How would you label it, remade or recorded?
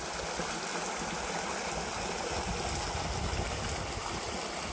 recorded